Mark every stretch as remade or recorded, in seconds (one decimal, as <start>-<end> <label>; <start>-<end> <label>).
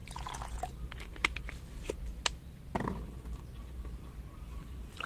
0.0-5.1 recorded